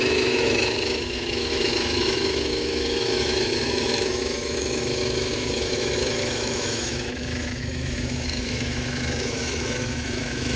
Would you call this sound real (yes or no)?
no